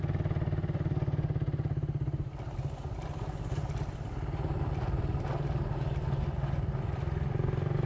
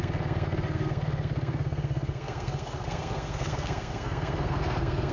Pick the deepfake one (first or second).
second